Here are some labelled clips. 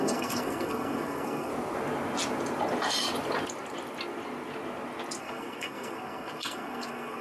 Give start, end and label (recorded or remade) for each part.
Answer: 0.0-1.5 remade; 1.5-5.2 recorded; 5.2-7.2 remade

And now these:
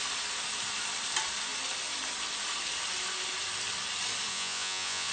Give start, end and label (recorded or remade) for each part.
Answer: 0.0-4.3 recorded; 4.3-5.1 remade